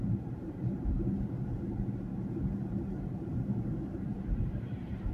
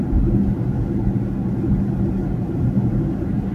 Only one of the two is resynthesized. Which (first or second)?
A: first